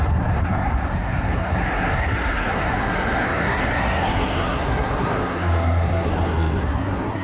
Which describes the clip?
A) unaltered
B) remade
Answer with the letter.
B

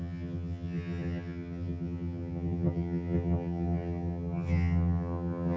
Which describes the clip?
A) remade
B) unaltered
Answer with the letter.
A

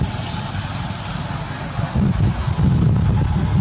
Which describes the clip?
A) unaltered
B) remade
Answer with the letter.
A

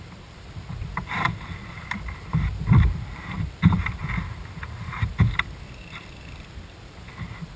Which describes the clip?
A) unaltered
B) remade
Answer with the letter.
B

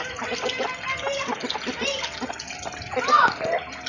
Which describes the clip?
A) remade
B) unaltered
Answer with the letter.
B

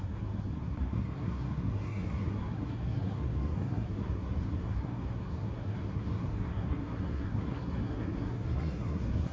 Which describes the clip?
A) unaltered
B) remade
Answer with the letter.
B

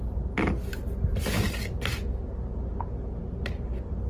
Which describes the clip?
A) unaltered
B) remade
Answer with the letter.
A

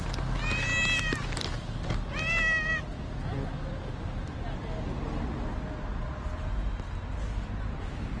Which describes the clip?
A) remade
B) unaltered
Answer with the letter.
B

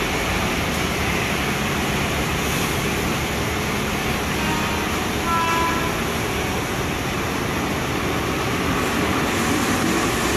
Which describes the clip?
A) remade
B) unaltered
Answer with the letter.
B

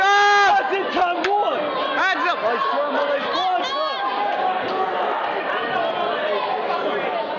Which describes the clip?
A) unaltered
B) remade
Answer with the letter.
A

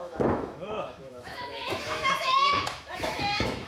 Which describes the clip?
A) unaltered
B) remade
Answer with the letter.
B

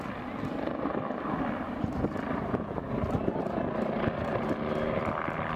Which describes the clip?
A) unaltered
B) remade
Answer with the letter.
A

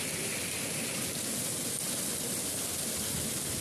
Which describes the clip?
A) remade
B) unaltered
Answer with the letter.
B